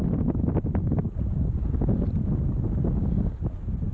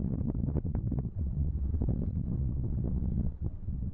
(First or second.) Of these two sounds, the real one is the first